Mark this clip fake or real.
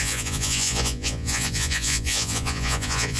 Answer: fake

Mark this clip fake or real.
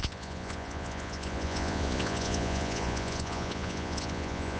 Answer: fake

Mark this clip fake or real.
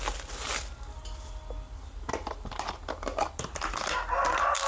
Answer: real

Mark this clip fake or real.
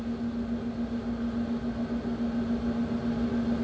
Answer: real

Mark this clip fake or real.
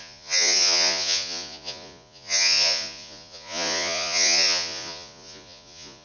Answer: fake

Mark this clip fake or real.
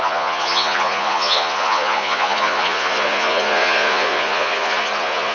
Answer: fake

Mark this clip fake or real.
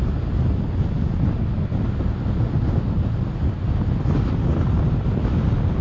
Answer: real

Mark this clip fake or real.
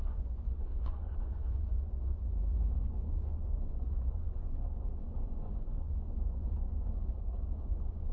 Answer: fake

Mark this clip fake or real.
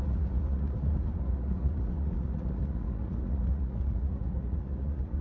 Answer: fake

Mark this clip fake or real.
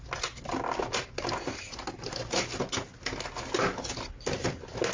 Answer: real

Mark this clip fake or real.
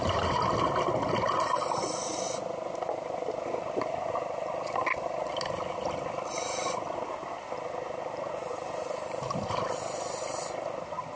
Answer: real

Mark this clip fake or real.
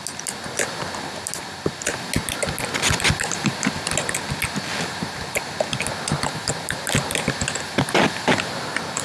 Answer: real